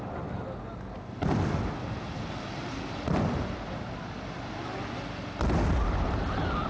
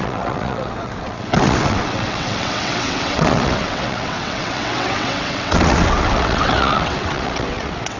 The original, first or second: first